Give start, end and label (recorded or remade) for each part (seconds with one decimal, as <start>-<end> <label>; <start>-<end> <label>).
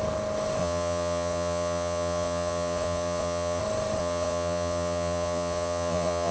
0.0-0.6 recorded; 0.6-3.6 remade; 3.6-4.0 recorded; 4.0-6.3 remade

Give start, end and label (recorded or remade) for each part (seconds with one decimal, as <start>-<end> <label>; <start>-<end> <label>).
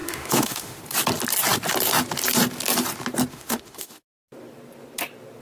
0.0-0.8 remade; 0.8-3.3 recorded; 3.3-4.0 remade; 4.0-5.4 recorded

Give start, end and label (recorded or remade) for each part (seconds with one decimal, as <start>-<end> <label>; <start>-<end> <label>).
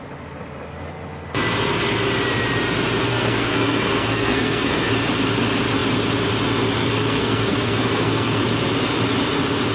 0.0-3.1 recorded; 3.1-4.9 remade; 4.9-6.8 recorded; 6.8-8.4 remade; 8.4-9.7 recorded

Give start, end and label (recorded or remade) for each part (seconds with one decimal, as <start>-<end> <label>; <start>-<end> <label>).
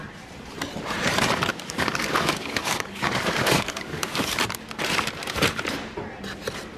0.0-1.5 recorded; 1.5-4.4 remade; 4.4-6.8 recorded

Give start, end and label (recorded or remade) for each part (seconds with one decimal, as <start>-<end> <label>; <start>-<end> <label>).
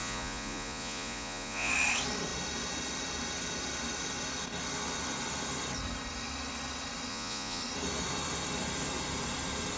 0.0-1.7 remade; 1.7-7.1 recorded; 7.1-7.6 remade; 7.6-9.8 recorded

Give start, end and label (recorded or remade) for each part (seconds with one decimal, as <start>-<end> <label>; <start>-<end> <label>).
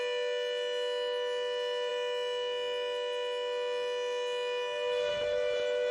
0.0-5.9 recorded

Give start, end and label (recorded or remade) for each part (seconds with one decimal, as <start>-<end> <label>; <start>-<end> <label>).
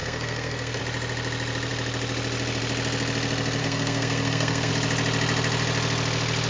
0.0-0.8 remade; 0.8-3.6 recorded; 3.6-4.7 remade; 4.7-6.5 recorded